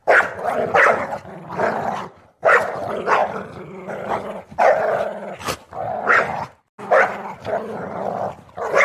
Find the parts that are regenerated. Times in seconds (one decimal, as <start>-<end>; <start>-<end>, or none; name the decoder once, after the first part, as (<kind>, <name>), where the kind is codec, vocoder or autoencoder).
none